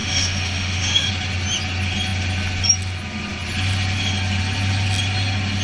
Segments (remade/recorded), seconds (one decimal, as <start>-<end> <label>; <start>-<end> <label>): 0.0-1.1 remade; 1.1-5.6 recorded